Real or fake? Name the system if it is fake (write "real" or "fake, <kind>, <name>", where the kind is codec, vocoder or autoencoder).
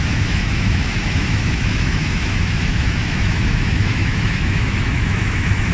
fake, autoencoder, DAC-VAE